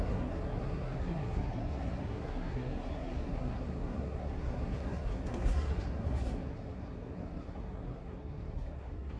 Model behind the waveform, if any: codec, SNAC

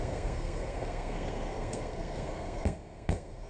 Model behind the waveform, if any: codec, SNAC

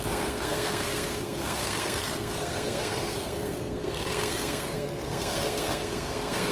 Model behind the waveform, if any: codec, SNAC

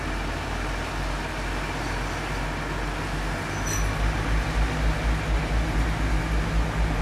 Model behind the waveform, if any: none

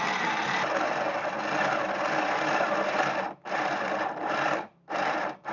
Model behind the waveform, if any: none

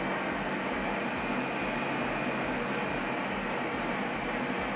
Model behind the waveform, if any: none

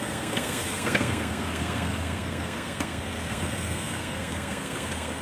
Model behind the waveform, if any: codec, SNAC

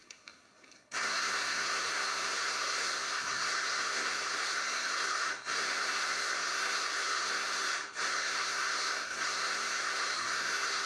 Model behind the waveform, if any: codec, SNAC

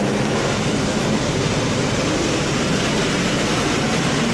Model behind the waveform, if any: none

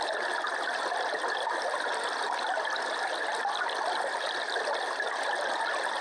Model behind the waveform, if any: none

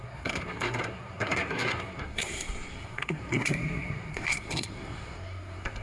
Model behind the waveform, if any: codec, SNAC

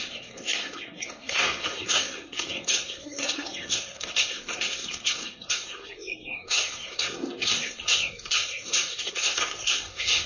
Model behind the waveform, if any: codec, SNAC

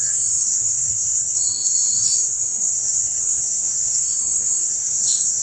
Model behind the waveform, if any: codec, SNAC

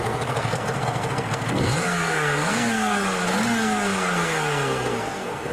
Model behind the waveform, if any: codec, SNAC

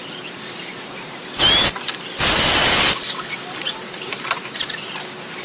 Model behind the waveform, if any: none